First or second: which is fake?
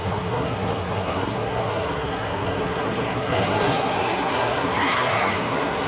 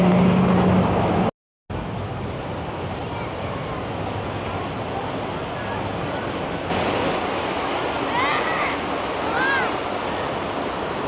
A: first